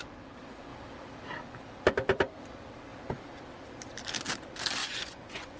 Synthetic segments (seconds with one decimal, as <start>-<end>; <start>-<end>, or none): 4.8-5.6